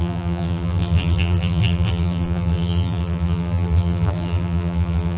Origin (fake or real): fake